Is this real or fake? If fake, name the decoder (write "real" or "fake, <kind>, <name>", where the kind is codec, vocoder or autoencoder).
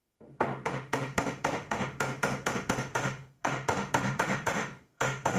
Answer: fake, autoencoder, DAC-VAE